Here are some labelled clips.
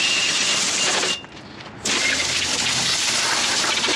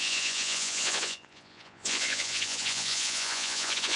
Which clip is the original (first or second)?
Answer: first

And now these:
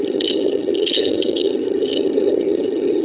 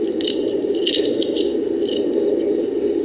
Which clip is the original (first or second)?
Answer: second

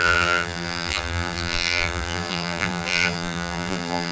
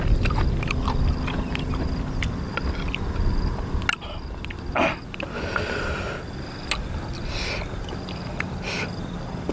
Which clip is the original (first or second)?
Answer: second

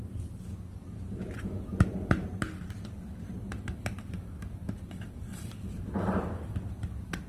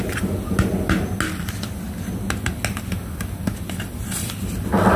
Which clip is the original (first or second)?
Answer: second